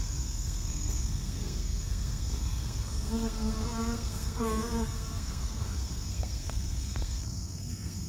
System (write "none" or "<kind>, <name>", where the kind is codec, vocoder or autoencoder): codec, SNAC